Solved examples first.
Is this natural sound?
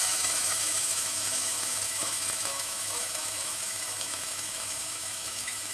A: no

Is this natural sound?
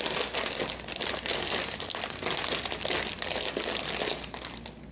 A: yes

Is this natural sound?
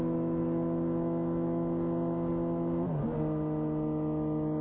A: yes